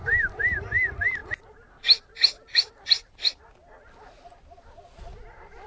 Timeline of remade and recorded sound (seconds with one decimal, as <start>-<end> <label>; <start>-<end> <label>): 0.0-5.7 recorded